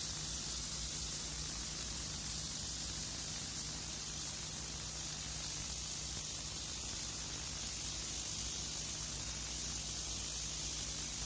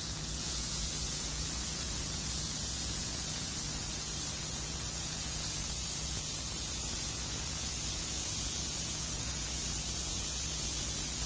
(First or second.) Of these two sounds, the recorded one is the first